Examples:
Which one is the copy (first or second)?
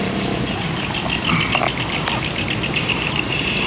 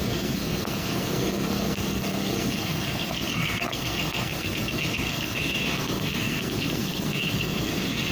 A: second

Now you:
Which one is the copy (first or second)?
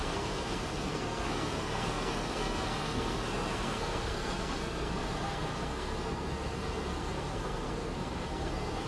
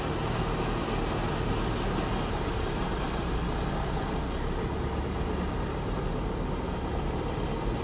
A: first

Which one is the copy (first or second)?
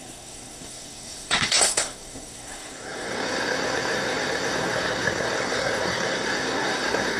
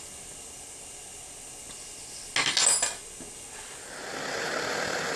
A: first